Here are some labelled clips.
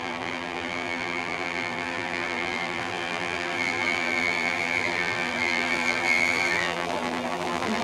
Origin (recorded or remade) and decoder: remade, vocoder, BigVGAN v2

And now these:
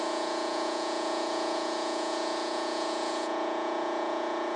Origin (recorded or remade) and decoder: remade, vocoder, Vocos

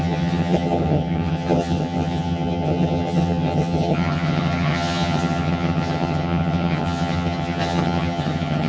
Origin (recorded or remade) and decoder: remade, vocoder, HiFi-GAN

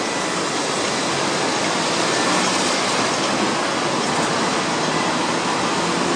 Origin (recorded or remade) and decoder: recorded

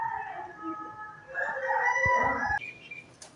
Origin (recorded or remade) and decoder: recorded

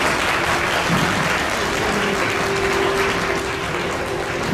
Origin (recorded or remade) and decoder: recorded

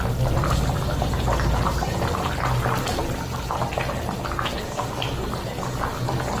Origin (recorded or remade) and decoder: recorded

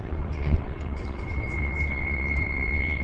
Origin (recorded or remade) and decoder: remade, vocoder, WaveNeXt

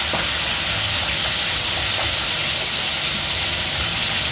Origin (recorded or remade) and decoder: recorded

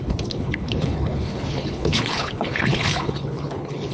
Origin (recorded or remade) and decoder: remade, codec, HILCodec